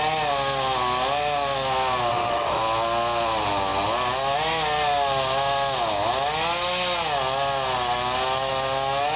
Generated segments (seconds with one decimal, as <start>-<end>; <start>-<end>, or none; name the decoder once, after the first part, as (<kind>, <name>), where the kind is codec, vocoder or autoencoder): 2.1-2.6 (autoencoder, DAC-VAE)